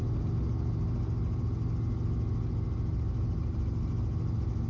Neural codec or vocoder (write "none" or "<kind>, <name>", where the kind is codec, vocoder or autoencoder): none